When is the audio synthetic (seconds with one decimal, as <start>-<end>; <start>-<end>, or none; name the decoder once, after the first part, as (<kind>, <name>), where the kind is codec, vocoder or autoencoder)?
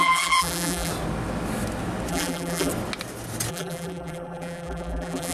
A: 0.0-0.9 (vocoder, BigVGAN v2); 2.1-2.7; 3.5-5.3